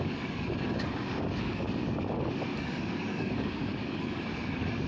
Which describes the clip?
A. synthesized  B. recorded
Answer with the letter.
A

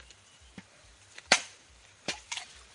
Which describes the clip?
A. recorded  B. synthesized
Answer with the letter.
B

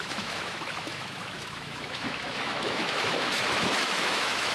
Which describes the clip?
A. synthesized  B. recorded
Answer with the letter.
A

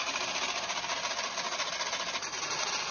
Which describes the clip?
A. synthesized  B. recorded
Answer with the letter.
B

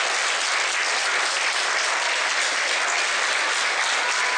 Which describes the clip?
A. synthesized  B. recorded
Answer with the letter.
B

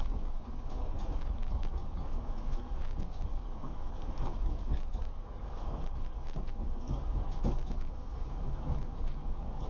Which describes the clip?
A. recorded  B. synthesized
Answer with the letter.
B